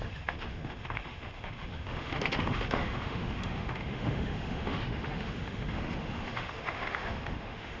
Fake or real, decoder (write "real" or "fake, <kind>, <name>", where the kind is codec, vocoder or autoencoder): fake, autoencoder, DAC-VAE